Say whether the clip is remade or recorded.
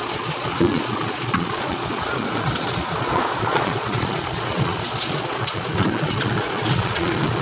remade